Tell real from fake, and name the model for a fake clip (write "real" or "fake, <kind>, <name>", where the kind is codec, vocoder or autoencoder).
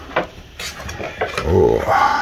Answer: real